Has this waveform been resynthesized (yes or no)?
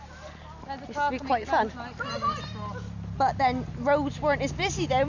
no